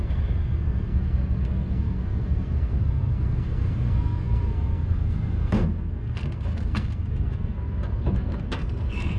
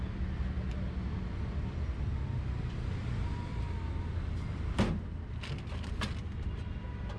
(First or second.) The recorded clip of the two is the second